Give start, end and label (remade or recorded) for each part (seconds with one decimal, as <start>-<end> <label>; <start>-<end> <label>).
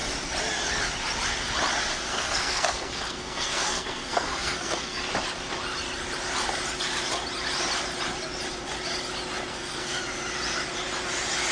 0.0-2.1 recorded; 2.1-5.0 remade; 5.0-9.5 recorded; 9.5-10.0 remade; 10.0-11.5 recorded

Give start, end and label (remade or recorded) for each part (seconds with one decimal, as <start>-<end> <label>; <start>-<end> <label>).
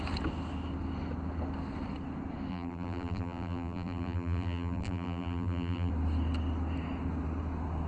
0.0-2.5 recorded; 2.5-5.9 remade; 5.9-7.9 recorded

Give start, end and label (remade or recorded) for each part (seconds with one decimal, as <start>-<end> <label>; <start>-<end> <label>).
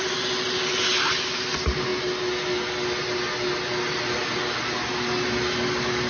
0.0-6.1 recorded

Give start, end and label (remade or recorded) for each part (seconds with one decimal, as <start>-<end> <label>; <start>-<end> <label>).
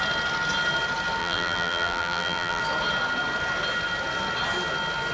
0.0-1.2 recorded; 1.2-2.6 remade; 2.6-5.1 recorded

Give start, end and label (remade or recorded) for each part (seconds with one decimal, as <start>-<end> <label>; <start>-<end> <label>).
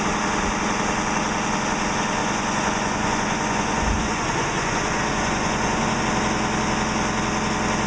0.0-2.2 recorded; 2.2-6.0 remade; 6.0-7.9 recorded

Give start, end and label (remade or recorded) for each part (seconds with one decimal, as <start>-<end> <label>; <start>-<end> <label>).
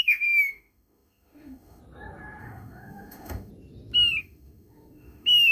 0.0-1.8 remade; 1.8-2.4 recorded; 2.4-3.5 remade; 3.5-4.2 recorded; 4.2-5.5 remade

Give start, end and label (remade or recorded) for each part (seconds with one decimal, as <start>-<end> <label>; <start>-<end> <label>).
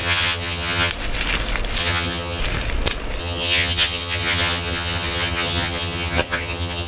0.0-0.9 remade; 0.9-1.8 recorded; 1.8-2.4 remade; 2.4-3.2 recorded; 3.2-6.9 remade